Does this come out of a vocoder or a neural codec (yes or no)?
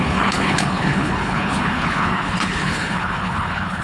yes